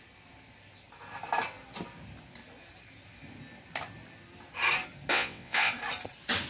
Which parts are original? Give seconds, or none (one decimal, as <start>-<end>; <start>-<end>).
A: 0.0-5.1; 5.7-6.5